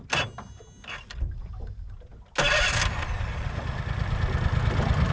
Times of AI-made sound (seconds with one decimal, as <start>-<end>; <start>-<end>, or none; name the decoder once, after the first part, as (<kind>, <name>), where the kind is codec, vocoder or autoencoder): none

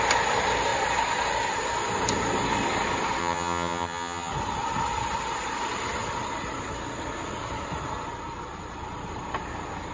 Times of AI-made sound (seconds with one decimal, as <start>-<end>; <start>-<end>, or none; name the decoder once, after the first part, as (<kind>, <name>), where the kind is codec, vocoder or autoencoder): 3.2-4.3 (vocoder, HiFi-GAN)

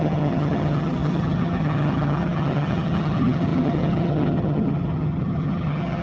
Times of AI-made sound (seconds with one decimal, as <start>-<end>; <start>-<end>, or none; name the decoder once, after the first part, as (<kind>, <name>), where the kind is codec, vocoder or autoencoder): 0.0-6.0 (vocoder, HiFi-GAN)

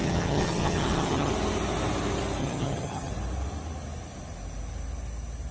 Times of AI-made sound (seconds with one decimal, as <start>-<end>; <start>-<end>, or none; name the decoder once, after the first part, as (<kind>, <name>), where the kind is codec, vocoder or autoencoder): 0.0-1.3 (vocoder, HiFi-GAN); 2.4-3.1

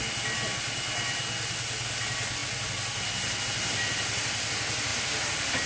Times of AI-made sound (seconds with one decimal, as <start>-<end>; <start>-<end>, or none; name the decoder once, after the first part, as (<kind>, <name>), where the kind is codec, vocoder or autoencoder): none

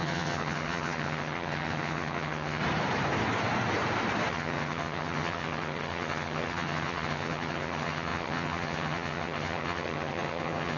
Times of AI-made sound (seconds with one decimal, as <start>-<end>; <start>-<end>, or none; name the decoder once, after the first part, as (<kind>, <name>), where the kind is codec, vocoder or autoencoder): 0.0-2.6 (vocoder, HiFi-GAN); 4.3-10.8

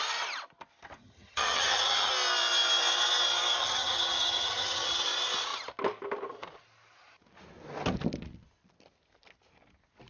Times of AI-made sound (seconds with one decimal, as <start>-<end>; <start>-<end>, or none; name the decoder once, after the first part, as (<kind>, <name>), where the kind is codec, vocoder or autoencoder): 1.0-2.1 (vocoder, HiFi-GAN); 3.6-5.0

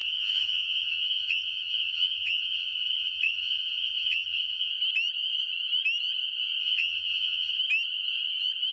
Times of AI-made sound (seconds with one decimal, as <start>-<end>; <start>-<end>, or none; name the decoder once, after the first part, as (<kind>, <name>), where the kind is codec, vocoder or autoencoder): 0.0-4.7 (vocoder, HiFi-GAN); 6.6-7.6